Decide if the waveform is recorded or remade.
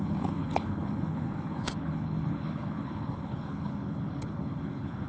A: remade